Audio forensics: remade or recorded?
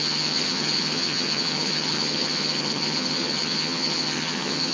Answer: remade